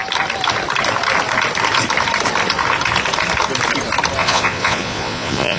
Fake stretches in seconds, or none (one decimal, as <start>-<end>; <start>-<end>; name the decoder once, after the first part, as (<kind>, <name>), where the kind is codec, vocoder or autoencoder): 4.2-5.6 (vocoder, Vocos)